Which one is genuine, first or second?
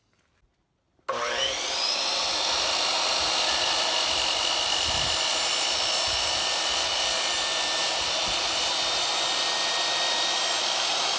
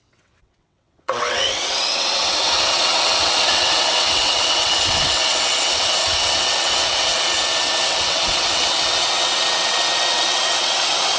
first